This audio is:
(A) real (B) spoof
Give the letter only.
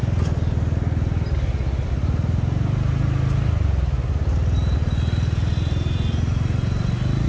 A